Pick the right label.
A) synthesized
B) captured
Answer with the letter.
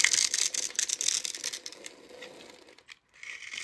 B